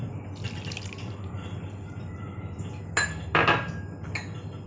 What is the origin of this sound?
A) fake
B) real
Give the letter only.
B